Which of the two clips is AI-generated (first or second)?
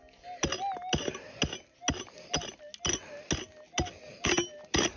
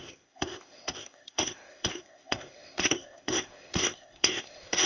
second